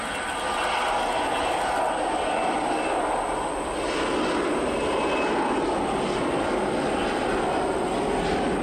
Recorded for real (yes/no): yes